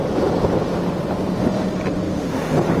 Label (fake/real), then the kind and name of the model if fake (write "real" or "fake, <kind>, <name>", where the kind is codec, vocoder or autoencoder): real